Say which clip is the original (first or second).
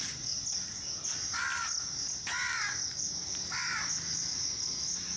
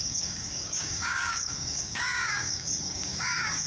first